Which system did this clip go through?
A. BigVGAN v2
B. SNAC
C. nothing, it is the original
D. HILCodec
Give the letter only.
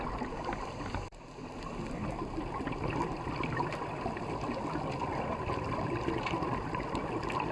C